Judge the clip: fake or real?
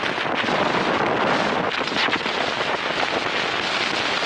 real